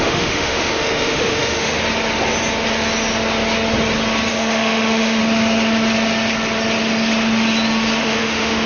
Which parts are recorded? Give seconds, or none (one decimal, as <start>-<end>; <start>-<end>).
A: 1.8-4.3; 5.2-8.0